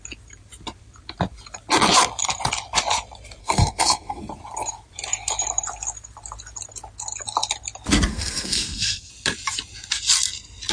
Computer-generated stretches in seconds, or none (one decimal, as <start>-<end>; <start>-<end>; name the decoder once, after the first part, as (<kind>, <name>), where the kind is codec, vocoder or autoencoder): 3.4-4.2 (codec, SNAC); 8.1-9.1